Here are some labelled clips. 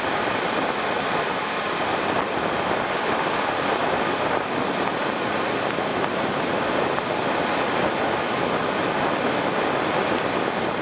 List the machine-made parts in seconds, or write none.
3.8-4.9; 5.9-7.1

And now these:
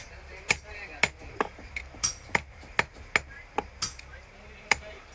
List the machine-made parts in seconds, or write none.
0.0-0.9; 4.0-5.1

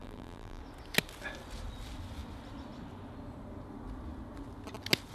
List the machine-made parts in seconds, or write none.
0.0-0.6

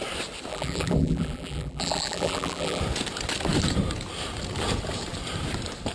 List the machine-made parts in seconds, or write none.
0.5-2.8

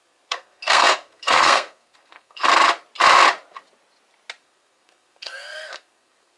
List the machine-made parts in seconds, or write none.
0.0-2.4; 4.4-6.4

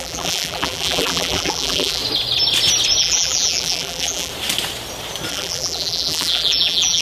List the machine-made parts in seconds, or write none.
0.0-2.0; 3.0-4.3; 5.3-7.0

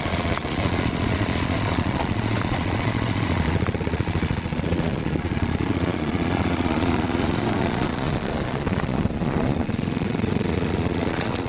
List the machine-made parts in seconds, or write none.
0.0-11.5

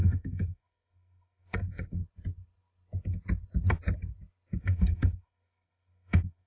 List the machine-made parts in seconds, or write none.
0.0-2.0; 4.6-6.5